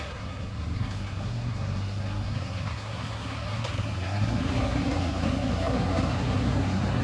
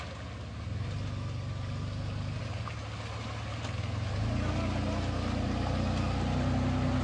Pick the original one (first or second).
second